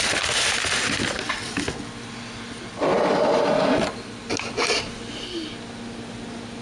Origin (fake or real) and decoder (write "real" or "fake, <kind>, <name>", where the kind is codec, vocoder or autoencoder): real